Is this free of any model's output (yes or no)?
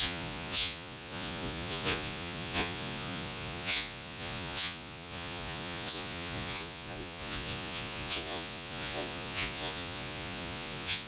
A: no